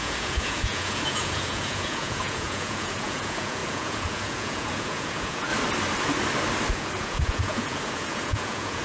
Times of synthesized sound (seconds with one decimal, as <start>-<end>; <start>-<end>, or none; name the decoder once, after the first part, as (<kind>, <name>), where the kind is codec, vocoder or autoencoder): 0.0-5.5 (vocoder, Vocos); 6.7-8.8